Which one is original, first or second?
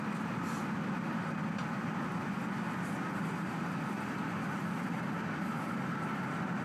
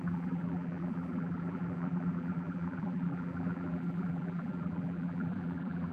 first